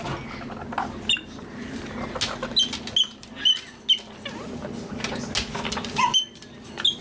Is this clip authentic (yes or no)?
yes